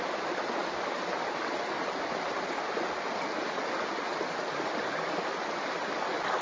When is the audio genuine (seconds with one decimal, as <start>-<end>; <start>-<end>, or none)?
0.0-6.4